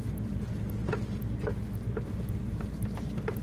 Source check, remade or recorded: recorded